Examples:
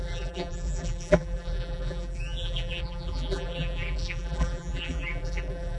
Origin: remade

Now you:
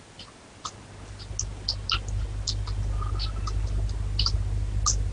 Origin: recorded